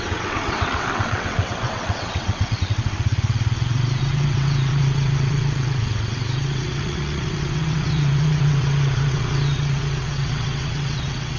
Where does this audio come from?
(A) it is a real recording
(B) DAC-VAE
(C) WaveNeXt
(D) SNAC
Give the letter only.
C